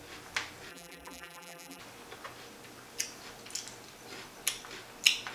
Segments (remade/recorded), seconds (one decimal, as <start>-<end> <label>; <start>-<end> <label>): 0.0-0.7 recorded; 0.7-1.8 remade; 1.8-5.3 recorded